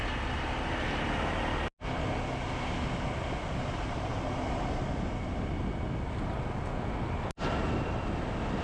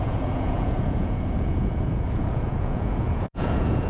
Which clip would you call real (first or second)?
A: first